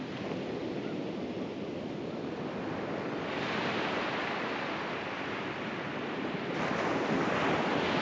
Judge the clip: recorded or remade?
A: recorded